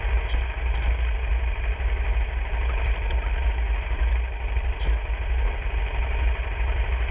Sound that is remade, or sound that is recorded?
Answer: recorded